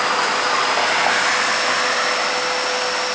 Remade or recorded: recorded